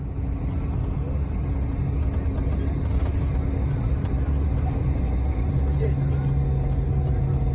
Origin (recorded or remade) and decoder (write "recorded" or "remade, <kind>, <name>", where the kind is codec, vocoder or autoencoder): recorded